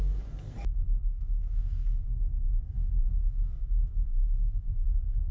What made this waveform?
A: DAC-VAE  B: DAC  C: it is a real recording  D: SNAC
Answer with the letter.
D